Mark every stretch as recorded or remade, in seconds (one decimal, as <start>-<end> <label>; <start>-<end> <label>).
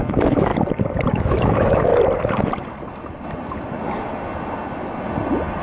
0.0-0.5 remade; 0.5-1.1 recorded; 1.1-1.9 remade; 1.9-5.6 recorded